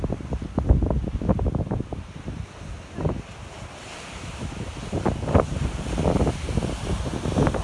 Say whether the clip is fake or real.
real